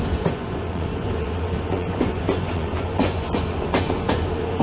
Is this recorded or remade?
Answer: remade